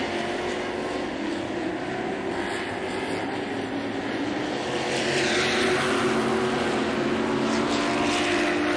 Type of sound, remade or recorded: recorded